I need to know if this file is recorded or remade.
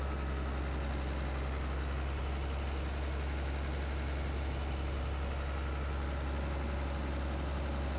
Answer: recorded